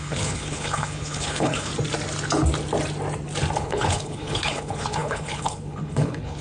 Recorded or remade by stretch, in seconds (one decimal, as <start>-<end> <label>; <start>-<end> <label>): 0.0-1.7 remade; 1.7-3.6 recorded; 3.6-6.4 remade